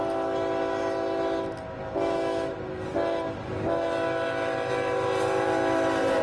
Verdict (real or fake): real